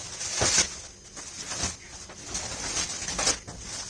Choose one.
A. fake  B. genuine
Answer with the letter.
B